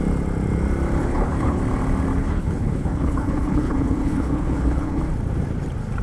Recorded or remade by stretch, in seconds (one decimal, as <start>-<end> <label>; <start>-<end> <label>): 0.0-1.0 recorded; 1.0-1.6 remade; 1.6-2.2 recorded; 2.2-5.0 remade; 5.0-6.0 recorded